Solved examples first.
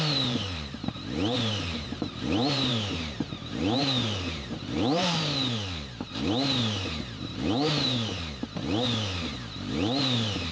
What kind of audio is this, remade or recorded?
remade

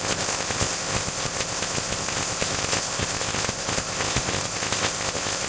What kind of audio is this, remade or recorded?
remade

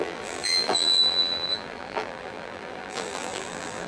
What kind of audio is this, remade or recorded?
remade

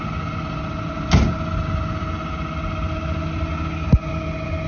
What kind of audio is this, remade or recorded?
recorded